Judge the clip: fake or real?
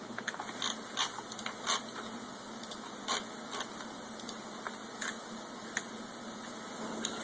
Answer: real